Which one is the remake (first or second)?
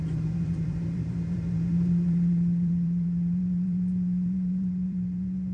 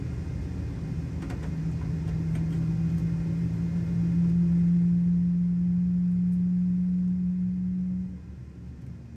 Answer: first